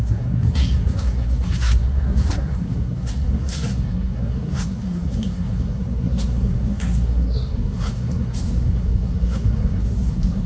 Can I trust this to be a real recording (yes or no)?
no